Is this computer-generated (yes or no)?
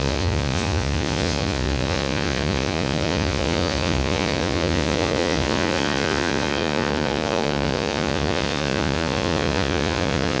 yes